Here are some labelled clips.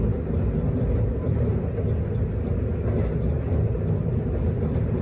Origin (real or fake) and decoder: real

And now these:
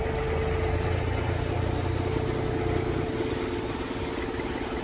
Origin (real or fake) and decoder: real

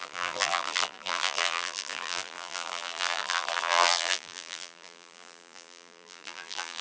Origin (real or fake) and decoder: fake, vocoder, BigVGAN v2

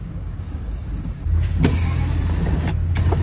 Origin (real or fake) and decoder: fake, codec, DAC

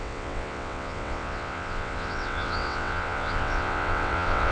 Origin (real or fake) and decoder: fake, vocoder, WaveNeXt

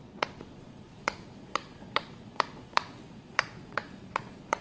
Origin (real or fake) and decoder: fake, vocoder, Vocos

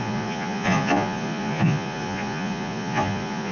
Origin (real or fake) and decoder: fake, vocoder, Vocos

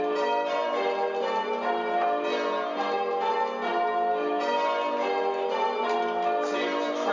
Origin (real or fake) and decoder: real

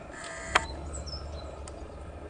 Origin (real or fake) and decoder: real